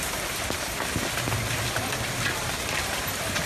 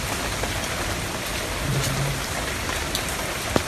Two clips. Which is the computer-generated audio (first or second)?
second